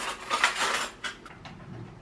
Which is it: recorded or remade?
recorded